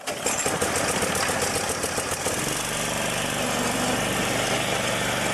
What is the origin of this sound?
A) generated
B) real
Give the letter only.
B